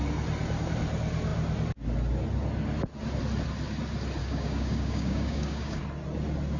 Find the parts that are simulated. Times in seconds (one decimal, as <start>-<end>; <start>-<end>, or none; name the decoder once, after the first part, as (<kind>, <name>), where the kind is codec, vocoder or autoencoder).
4.2-5.8 (codec, DAC)